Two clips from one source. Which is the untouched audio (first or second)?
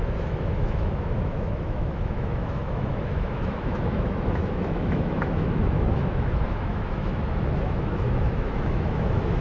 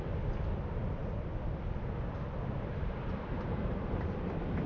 second